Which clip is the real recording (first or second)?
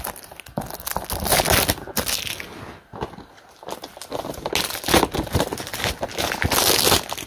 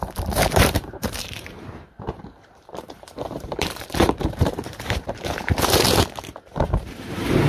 first